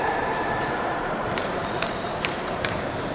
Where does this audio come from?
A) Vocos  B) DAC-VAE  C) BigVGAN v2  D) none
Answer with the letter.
C